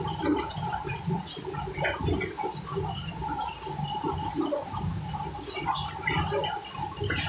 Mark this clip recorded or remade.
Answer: recorded